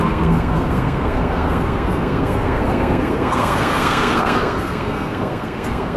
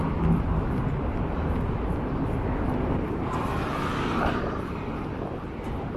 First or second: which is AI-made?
first